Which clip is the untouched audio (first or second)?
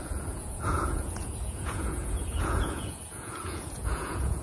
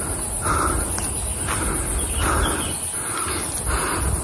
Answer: second